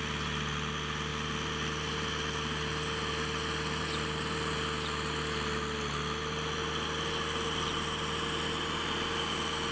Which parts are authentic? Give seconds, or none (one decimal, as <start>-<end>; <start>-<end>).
0.0-9.7